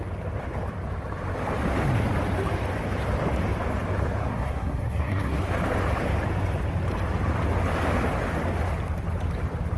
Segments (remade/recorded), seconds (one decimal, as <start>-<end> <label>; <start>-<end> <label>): 0.0-4.2 recorded; 4.2-5.5 remade; 5.5-9.8 recorded